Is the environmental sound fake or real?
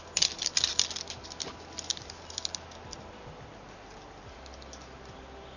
real